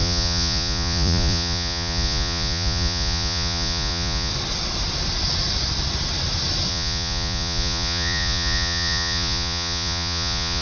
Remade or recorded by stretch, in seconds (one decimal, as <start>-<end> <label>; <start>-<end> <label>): 0.0-4.3 remade; 4.3-6.7 recorded; 6.7-10.6 remade